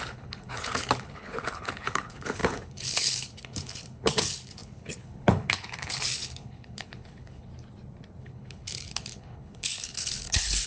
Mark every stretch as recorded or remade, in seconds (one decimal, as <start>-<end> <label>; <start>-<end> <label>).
0.0-7.5 remade; 7.5-8.2 recorded; 8.2-10.7 remade